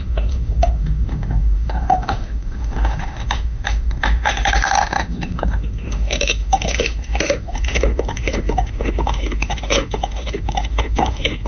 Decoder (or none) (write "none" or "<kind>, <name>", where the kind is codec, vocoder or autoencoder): autoencoder, DAC-VAE